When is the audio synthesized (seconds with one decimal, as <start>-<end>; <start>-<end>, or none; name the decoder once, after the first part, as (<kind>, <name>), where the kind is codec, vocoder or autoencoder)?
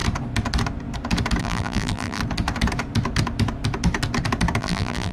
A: 1.4-2.2 (vocoder, BigVGAN v2); 4.6-5.1